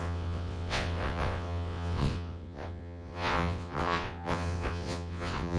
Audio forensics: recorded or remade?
remade